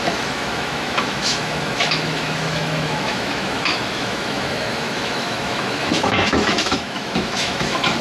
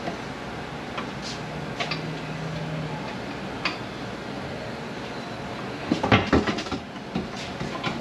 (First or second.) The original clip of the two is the second